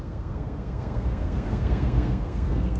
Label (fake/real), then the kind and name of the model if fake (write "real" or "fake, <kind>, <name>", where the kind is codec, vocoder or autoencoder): fake, codec, SNAC